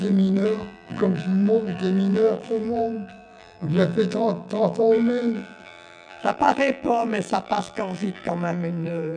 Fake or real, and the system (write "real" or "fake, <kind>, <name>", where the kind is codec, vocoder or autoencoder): fake, vocoder, BigVGAN v2